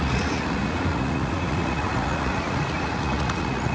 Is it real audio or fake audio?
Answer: fake